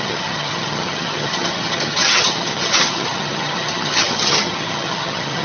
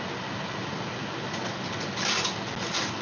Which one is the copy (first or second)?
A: first